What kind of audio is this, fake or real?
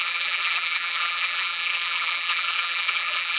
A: fake